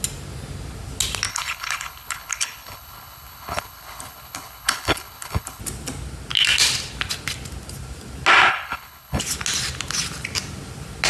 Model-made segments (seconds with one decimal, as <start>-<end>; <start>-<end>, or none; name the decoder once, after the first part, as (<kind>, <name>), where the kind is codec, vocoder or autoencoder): 1.3-5.6 (codec, HILCodec); 8.5-9.2